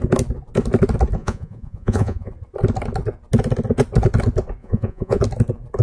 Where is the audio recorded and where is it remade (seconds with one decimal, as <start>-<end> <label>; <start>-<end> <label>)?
0.0-1.2 recorded; 1.2-2.3 remade; 2.3-4.6 recorded; 4.6-5.2 remade; 5.2-5.8 recorded